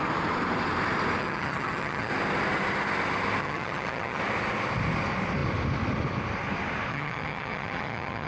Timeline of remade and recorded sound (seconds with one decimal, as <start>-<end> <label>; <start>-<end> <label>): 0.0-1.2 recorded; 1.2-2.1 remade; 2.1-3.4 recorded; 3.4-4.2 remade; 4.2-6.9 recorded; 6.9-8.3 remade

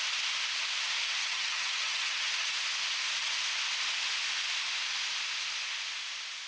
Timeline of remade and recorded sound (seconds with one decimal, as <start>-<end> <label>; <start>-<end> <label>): 0.0-1.2 recorded; 1.2-2.5 remade; 2.5-6.5 recorded

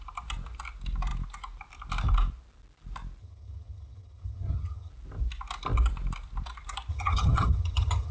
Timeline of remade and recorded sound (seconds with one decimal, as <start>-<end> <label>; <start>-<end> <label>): 0.0-3.2 recorded; 3.2-4.9 remade; 4.9-6.9 recorded; 6.9-8.1 remade

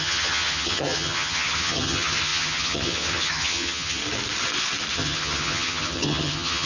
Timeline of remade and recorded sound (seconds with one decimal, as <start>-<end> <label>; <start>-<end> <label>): 0.0-4.0 remade; 4.0-4.9 recorded; 4.9-6.7 remade

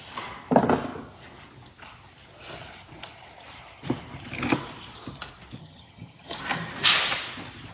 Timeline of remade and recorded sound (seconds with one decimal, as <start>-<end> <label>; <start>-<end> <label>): 0.0-5.6 recorded; 5.6-6.4 remade; 6.4-7.7 recorded